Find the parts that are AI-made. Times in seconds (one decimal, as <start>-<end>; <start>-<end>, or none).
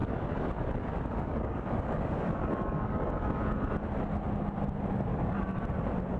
0.0-3.7; 5.1-5.6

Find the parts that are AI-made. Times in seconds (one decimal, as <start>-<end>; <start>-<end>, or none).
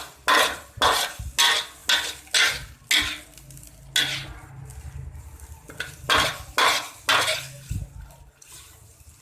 none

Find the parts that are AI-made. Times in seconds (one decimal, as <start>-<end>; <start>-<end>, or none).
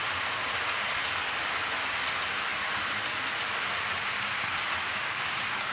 4.9-5.7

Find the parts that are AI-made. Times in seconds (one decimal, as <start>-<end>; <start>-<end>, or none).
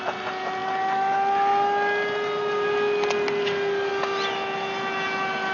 none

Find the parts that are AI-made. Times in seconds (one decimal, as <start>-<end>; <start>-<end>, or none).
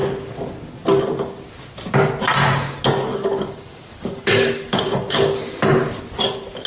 3.1-5.6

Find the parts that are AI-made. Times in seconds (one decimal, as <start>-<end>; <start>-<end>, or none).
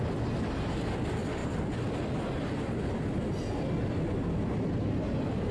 none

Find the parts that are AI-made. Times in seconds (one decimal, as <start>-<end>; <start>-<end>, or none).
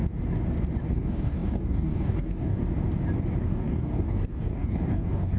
0.9-2.6; 3.4-5.4